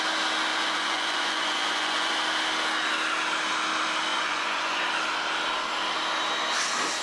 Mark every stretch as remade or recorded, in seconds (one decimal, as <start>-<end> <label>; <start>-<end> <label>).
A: 0.0-0.5 recorded; 0.5-2.1 remade; 2.1-4.1 recorded; 4.1-4.8 remade; 4.8-7.0 recorded

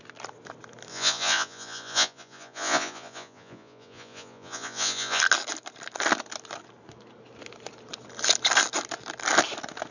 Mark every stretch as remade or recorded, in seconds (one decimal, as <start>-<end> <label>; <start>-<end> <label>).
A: 0.0-0.9 recorded; 0.9-5.2 remade; 5.2-9.9 recorded

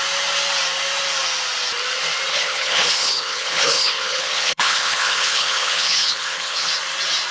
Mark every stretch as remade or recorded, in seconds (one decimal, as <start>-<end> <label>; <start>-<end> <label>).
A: 0.0-2.3 recorded; 2.3-6.7 remade; 6.7-7.3 recorded

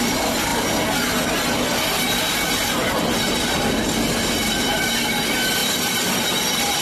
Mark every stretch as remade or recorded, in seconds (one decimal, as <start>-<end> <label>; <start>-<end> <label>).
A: 0.0-0.5 remade; 0.5-4.6 recorded; 4.6-6.8 remade